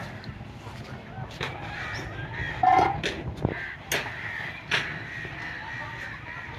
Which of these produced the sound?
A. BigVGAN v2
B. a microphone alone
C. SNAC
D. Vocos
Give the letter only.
B